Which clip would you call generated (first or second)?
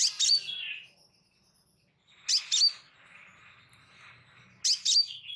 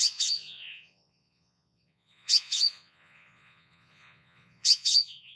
second